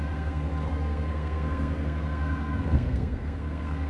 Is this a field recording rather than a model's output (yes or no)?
no